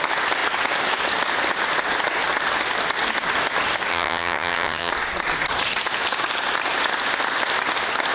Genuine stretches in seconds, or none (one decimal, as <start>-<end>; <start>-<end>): 0.0-3.9; 4.9-8.1